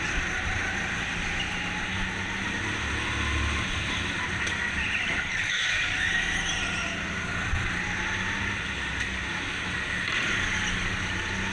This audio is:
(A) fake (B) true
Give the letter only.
B